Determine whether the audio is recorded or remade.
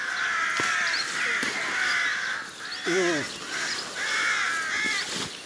recorded